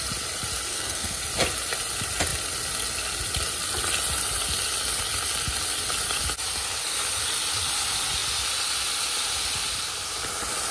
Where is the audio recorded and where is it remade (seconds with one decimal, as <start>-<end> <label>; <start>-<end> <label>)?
0.0-0.7 recorded; 0.7-1.2 remade; 1.2-10.7 recorded